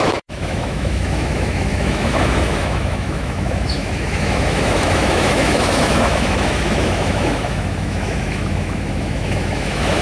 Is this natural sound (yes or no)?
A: no